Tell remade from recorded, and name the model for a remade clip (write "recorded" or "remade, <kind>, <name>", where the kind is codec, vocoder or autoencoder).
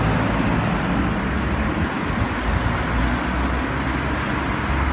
recorded